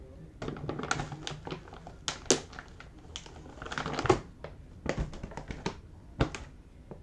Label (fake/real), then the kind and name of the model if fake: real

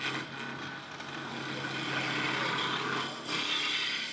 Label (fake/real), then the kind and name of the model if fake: real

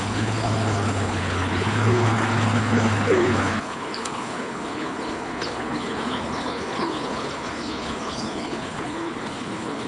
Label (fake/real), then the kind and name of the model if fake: fake, codec, HILCodec